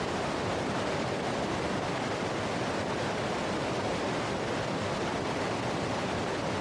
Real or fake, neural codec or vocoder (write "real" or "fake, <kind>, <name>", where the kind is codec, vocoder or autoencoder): real